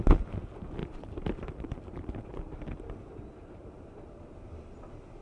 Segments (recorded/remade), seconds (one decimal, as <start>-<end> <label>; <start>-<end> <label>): 0.0-0.8 recorded; 0.8-3.1 remade; 3.1-3.6 recorded; 3.6-4.7 remade; 4.7-5.2 recorded